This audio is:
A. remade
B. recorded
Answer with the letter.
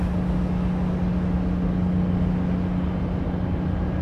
B